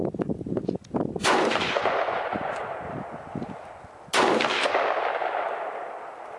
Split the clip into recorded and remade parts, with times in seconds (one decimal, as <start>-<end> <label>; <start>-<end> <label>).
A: 0.0-1.2 recorded; 1.2-2.6 remade; 2.6-6.4 recorded